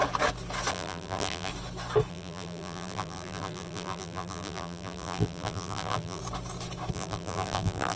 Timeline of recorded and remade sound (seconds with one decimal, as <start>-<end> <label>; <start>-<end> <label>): 0.0-0.7 recorded; 0.7-1.5 remade; 1.5-2.1 recorded; 2.1-6.2 remade; 6.2-6.9 recorded; 6.9-8.0 remade